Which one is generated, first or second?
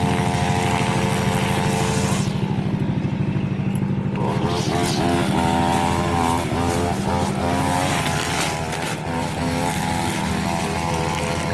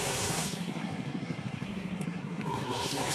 second